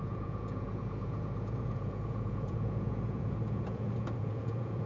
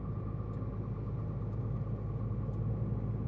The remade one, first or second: first